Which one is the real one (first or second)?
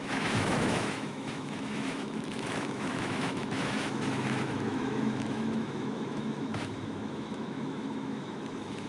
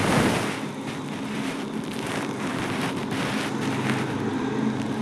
second